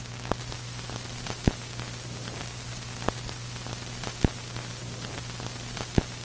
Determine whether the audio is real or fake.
real